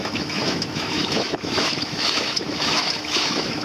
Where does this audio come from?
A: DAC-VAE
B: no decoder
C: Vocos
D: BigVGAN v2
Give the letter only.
A